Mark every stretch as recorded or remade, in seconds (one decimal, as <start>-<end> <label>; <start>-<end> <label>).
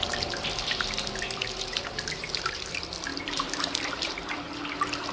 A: 0.0-5.1 remade